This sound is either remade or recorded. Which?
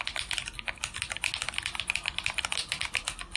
recorded